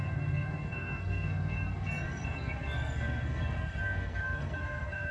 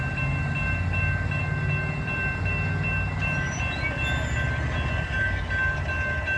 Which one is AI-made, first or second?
first